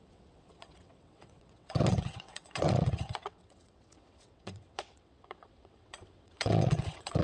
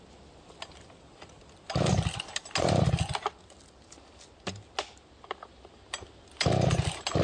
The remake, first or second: first